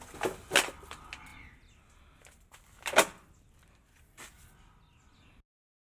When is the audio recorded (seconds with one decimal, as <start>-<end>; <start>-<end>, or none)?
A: 0.0-5.8